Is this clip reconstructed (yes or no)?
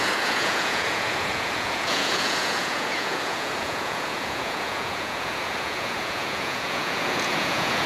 yes